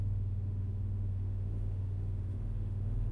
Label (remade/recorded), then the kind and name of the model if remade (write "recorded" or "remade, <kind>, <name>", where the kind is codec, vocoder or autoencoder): remade, autoencoder, DAC-VAE